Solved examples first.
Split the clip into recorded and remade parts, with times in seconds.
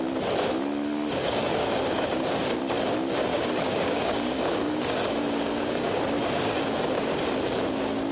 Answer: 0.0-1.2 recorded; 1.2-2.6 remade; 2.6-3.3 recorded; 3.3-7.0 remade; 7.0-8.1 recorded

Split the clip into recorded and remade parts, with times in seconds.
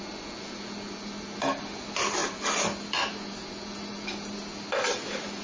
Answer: 0.0-5.4 recorded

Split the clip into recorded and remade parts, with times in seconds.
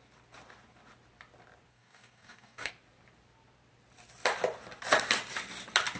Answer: 0.0-1.7 recorded; 1.7-2.7 remade; 2.7-6.0 recorded